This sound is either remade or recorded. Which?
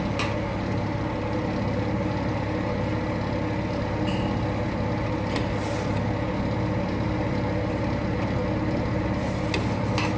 recorded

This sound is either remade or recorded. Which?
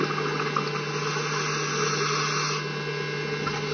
recorded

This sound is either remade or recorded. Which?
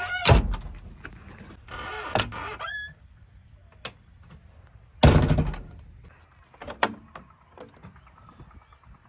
recorded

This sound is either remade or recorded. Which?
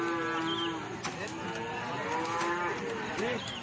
recorded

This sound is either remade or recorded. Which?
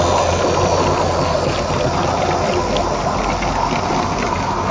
recorded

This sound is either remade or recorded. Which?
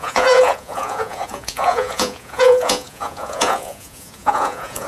remade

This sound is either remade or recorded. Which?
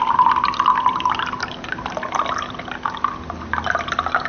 recorded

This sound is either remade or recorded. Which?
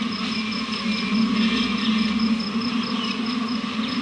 recorded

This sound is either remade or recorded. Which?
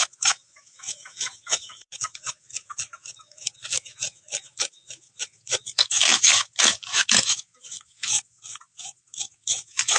remade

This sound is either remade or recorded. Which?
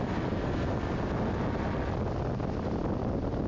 recorded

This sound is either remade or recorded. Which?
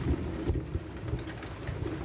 recorded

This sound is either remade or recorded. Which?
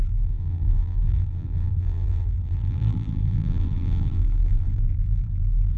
remade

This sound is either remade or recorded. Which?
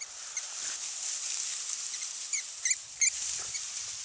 recorded